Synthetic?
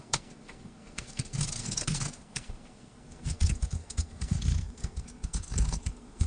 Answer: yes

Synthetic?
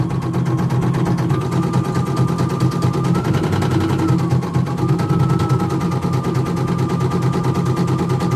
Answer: no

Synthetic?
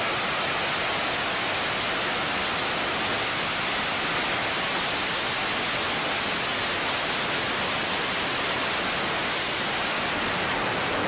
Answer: no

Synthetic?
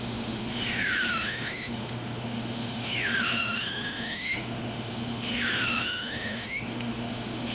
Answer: yes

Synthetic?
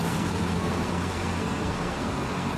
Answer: yes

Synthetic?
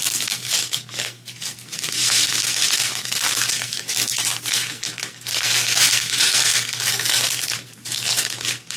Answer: yes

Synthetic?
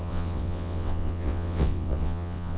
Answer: yes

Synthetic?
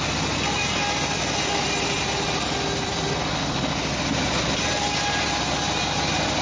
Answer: no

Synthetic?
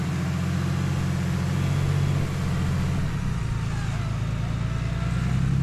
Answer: no